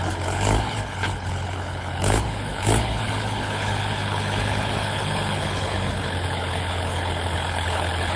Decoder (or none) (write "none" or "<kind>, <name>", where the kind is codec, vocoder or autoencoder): codec, HILCodec